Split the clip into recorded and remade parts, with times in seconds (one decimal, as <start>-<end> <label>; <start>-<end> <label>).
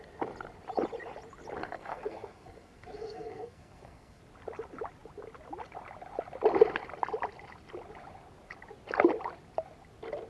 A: 0.0-1.6 recorded; 1.6-4.2 remade; 4.2-10.3 recorded